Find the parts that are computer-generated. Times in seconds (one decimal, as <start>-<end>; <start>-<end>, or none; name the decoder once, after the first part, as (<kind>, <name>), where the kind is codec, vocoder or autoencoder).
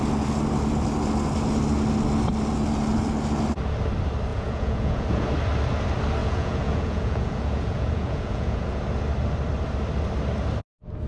4.3-5.2 (vocoder, Vocos); 6.2-8.8